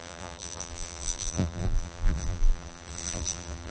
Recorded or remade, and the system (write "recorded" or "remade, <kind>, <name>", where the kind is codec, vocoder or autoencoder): remade, vocoder, BigVGAN v2